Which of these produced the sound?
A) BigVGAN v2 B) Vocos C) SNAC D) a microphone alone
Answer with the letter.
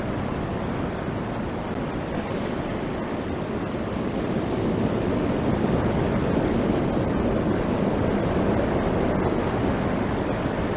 D